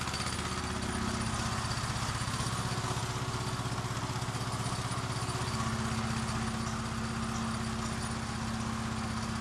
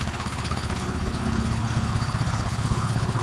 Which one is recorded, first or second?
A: first